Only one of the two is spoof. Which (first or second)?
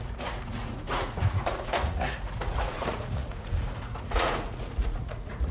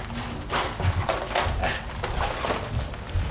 first